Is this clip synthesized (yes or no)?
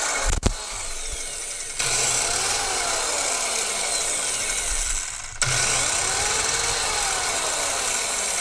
no